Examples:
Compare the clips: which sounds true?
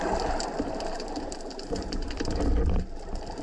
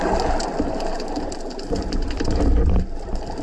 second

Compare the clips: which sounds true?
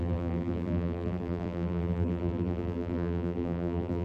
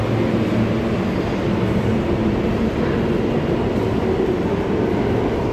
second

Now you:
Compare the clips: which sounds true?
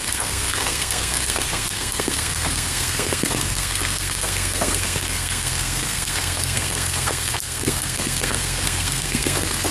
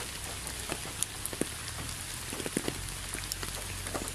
second